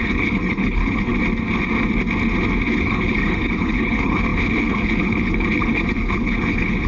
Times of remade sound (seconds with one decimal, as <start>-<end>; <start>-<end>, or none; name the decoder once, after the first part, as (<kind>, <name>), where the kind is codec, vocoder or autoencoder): 0.0-1.1 (codec, HILCodec); 2.7-6.9